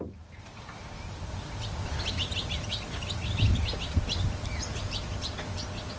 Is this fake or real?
real